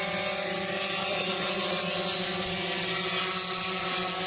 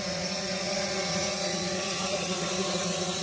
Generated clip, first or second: second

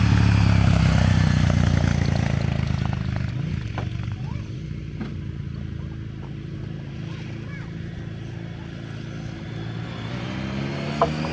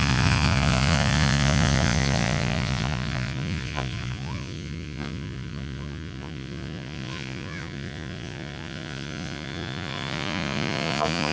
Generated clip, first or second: second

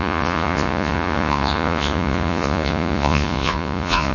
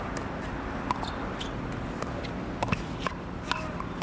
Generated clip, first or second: first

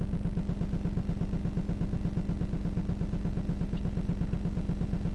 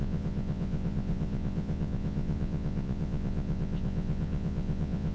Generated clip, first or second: second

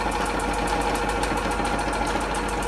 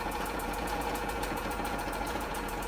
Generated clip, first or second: second